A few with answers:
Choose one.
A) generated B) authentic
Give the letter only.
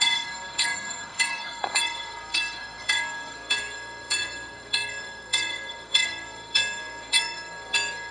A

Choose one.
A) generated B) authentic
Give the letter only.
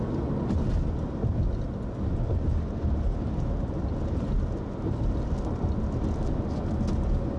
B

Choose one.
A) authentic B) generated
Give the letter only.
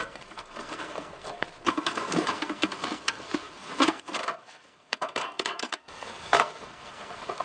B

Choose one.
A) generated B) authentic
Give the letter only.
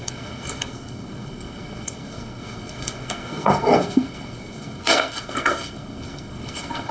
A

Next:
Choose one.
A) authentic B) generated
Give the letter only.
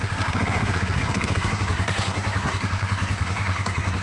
B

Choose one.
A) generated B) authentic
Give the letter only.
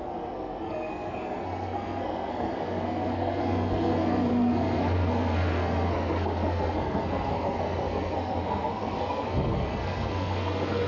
A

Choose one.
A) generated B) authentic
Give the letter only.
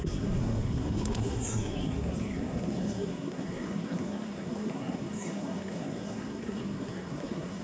A